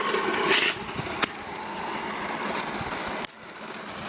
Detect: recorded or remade recorded